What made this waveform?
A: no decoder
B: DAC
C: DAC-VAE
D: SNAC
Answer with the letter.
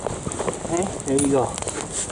A